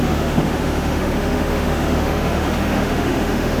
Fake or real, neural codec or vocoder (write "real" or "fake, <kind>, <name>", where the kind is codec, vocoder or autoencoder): fake, autoencoder, DAC-VAE